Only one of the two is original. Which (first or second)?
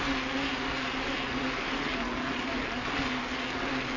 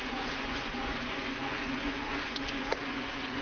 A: first